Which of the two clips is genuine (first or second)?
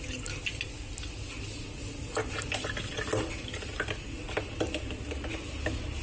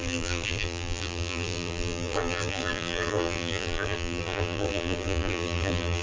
first